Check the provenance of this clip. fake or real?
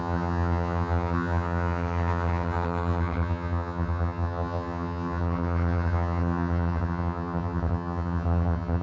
fake